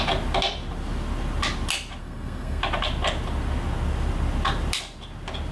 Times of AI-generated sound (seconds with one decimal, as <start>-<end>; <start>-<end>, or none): 2.0-2.6